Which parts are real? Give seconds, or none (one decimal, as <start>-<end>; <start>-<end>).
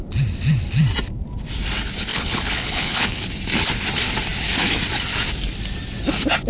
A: 0.0-2.1; 3.2-6.5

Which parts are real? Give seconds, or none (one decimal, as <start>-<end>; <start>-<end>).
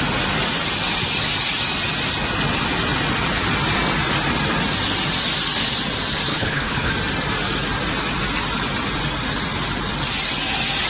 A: 0.0-6.3; 6.9-10.9